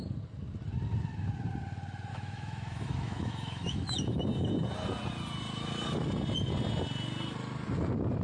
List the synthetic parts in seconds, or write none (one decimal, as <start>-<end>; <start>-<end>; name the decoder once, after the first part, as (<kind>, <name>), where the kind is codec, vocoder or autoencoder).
2.1-4.0 (autoencoder, DAC-VAE)